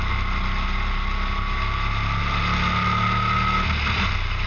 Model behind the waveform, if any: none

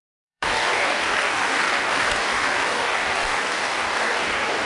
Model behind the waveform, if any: codec, DAC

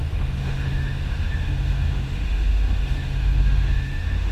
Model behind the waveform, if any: autoencoder, DAC-VAE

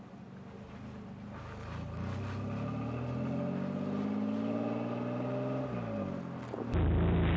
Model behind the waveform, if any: none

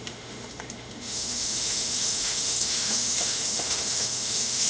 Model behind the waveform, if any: autoencoder, DAC-VAE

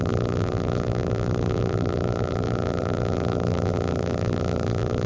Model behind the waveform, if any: vocoder, BigVGAN v2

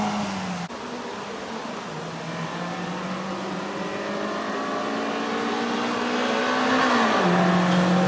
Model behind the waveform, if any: none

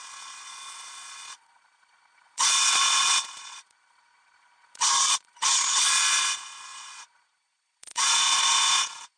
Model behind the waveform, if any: vocoder, Vocos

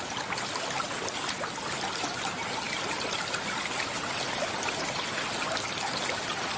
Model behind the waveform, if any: none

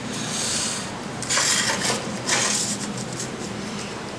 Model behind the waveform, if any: vocoder, BigVGAN v2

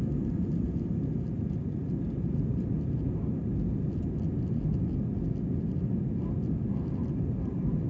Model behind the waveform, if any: none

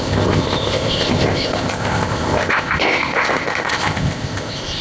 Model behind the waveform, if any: codec, ZipCodec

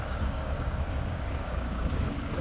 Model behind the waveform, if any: codec, DAC